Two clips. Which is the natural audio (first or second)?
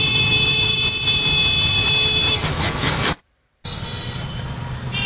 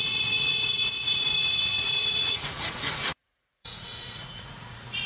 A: first